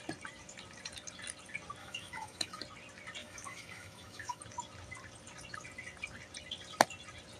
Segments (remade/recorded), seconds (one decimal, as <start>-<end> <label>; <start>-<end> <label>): 0.0-1.8 recorded; 1.8-2.6 remade; 2.6-3.2 recorded; 3.2-4.4 remade; 4.4-7.4 recorded